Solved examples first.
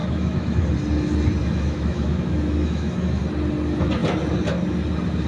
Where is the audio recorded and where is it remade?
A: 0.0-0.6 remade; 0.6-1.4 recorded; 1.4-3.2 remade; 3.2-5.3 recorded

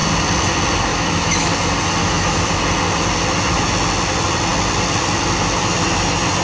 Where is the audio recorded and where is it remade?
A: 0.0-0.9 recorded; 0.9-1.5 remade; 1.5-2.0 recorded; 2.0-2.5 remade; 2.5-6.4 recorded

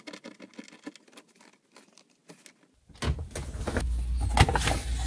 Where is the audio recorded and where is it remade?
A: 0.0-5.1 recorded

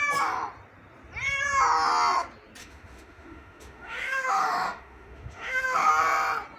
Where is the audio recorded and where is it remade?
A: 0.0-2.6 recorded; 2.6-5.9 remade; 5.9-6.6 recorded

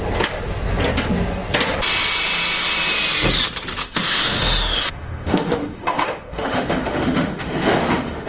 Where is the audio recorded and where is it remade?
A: 0.0-3.8 recorded; 3.8-8.3 remade

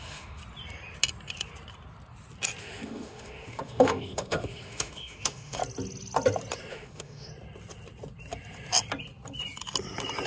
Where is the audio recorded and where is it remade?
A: 0.0-0.4 remade; 0.4-2.6 recorded; 2.6-5.6 remade; 5.6-6.7 recorded; 6.7-7.3 remade; 7.3-10.3 recorded

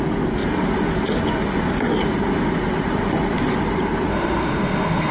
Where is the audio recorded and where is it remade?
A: 0.0-4.1 recorded; 4.1-5.1 remade